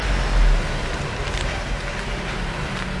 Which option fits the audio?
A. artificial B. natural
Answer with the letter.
B